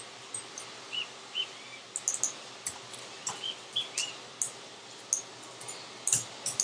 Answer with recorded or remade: recorded